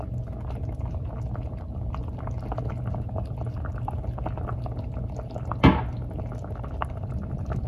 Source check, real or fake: real